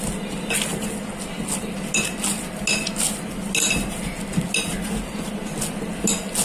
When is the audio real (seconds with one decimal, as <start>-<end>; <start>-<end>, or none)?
0.0-6.4

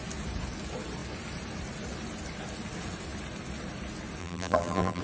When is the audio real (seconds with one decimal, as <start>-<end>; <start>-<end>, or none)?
0.0-4.2